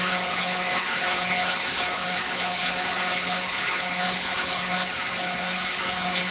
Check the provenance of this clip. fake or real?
fake